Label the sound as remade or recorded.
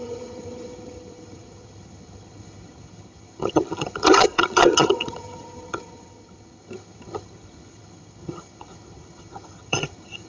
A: remade